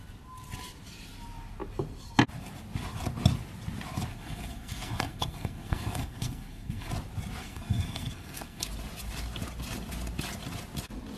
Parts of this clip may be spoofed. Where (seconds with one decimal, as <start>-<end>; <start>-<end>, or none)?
4.1-6.9; 7.4-8.7